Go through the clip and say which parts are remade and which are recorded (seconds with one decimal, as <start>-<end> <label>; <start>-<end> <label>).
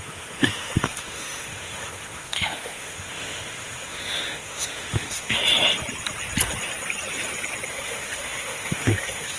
0.0-5.4 remade; 5.4-7.7 recorded; 7.7-9.4 remade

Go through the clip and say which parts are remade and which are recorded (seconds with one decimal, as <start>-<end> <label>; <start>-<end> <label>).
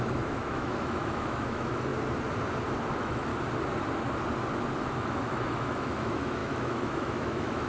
0.0-1.9 remade; 1.9-2.9 recorded; 2.9-3.3 remade; 3.3-4.9 recorded; 4.9-7.7 remade